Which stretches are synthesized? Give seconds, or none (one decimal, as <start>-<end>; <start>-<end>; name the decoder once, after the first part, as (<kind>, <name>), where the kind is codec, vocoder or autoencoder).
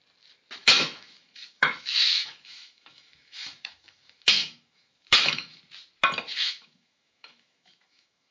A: 0.6-5.6 (autoencoder, DAC-VAE); 6.3-8.3